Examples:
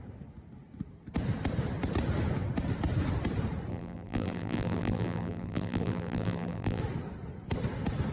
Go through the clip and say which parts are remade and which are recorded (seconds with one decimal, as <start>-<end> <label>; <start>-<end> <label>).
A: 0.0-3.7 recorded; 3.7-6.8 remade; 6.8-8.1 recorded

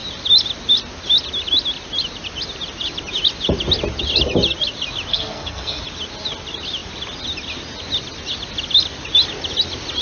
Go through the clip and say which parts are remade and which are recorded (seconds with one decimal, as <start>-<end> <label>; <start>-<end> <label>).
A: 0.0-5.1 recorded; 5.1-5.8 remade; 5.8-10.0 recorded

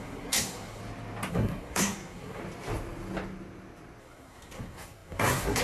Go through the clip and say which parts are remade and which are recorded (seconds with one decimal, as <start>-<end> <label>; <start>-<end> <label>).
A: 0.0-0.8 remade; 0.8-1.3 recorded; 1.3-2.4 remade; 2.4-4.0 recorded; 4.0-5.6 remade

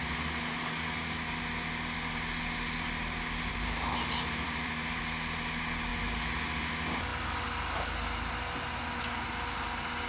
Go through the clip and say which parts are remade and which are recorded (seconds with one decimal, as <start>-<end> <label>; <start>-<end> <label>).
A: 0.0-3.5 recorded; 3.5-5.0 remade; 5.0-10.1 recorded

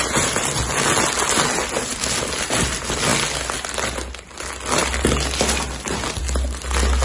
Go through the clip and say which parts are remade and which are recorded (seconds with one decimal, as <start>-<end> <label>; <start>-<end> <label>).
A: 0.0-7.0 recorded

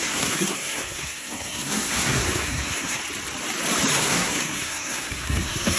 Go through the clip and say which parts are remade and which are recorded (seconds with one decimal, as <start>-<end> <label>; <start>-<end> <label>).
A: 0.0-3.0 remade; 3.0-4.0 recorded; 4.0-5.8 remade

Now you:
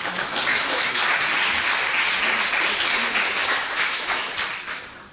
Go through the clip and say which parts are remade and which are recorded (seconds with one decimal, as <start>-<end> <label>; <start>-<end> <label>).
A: 0.0-0.5 recorded; 0.5-1.0 remade; 1.0-3.4 recorded; 3.4-4.3 remade; 4.3-5.1 recorded